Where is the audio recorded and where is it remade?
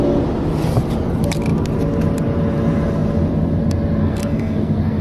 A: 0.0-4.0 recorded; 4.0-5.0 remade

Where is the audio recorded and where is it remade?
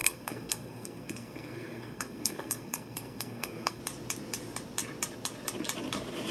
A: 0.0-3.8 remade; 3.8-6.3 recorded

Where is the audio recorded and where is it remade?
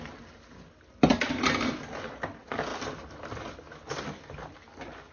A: 0.0-5.1 recorded